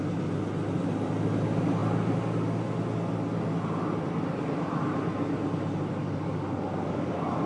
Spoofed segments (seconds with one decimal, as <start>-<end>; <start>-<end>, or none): 6.0-7.5

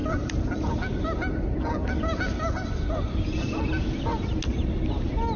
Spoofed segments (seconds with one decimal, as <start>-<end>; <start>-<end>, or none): none

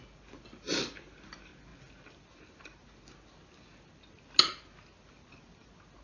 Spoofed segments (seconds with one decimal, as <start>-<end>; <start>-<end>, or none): none

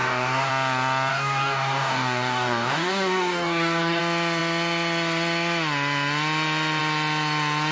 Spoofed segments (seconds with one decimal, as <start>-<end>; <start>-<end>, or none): 0.0-0.5; 1.1-4.0